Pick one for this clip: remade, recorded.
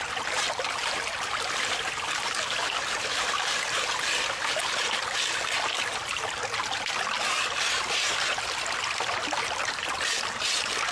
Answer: recorded